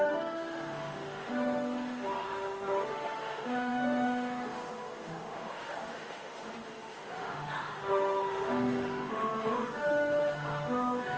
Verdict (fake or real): fake